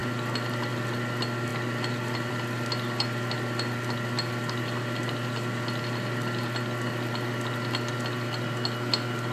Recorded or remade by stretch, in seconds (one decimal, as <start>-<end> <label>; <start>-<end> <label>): 0.0-9.3 recorded